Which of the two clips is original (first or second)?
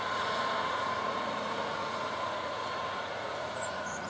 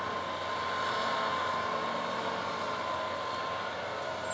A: second